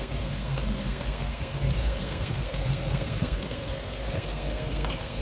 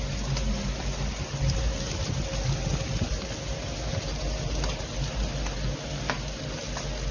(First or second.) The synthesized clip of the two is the first